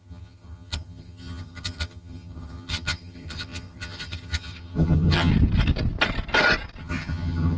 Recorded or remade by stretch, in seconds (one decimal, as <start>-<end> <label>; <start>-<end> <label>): 0.0-5.3 remade; 5.3-6.8 recorded; 6.8-7.6 remade